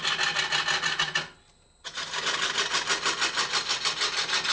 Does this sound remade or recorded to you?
recorded